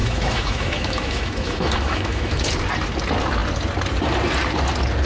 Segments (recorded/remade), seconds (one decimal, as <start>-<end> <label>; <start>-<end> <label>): 0.0-2.4 remade; 2.4-5.1 recorded